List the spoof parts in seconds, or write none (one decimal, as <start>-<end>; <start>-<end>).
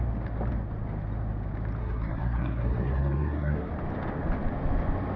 1.8-3.7